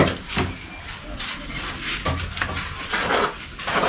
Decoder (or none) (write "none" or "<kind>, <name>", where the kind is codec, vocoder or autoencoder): none